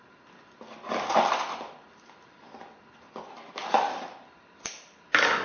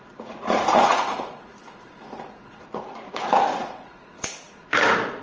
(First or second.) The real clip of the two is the first